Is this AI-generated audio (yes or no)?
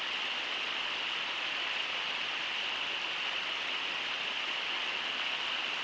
no